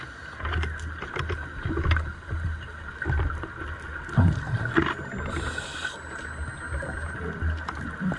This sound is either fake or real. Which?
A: real